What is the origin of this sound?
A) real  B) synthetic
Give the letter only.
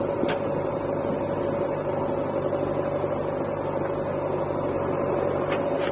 A